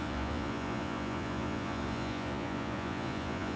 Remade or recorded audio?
remade